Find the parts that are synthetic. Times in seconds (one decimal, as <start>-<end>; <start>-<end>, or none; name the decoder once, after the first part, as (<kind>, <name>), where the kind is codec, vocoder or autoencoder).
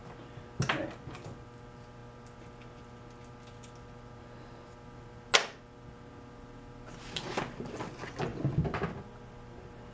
none